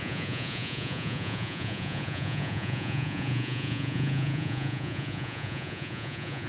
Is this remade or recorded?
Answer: remade